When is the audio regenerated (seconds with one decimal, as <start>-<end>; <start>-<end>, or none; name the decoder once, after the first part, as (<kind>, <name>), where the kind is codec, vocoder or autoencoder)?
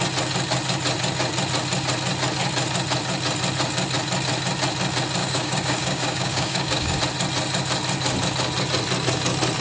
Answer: 5.2-7.0 (codec, DAC)